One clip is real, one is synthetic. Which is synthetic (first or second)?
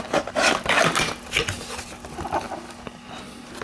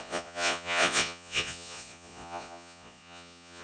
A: second